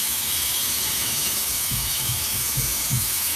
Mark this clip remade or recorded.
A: remade